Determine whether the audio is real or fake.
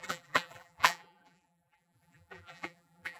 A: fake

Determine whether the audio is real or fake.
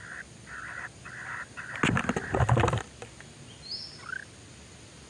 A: real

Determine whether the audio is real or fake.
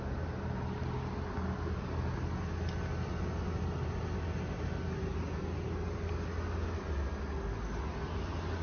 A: real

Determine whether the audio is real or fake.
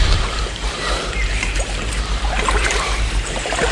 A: fake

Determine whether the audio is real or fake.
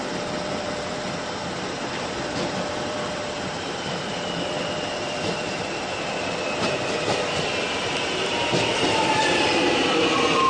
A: fake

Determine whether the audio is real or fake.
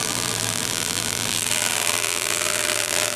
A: fake